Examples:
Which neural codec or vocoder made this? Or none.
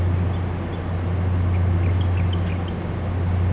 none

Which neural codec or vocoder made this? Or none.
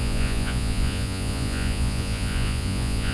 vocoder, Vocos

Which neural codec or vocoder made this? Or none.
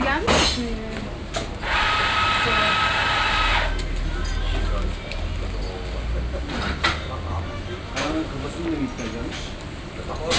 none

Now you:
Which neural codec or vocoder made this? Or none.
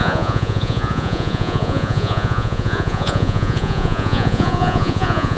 vocoder, Vocos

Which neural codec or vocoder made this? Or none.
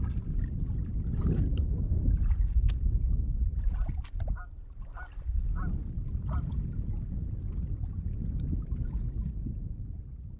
none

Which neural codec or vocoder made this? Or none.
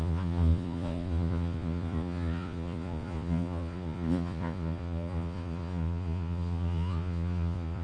vocoder, Vocos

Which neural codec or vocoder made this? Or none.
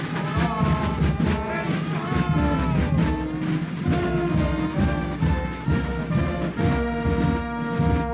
none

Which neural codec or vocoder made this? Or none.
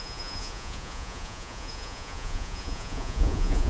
vocoder, Vocos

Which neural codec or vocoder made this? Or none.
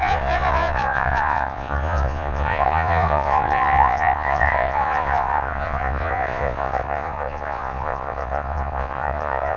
vocoder, Vocos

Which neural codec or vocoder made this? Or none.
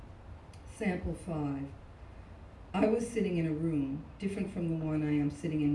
none